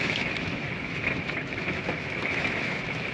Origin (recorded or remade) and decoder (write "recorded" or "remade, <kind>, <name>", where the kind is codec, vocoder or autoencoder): remade, autoencoder, DAC-VAE